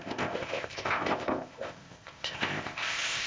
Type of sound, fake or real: fake